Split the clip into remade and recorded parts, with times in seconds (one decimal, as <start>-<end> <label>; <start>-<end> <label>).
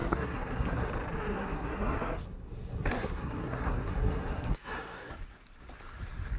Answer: 0.0-0.9 remade; 0.9-1.3 recorded; 1.3-5.1 remade; 5.1-6.4 recorded